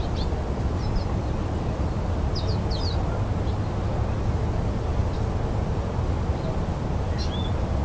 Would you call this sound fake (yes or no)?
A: no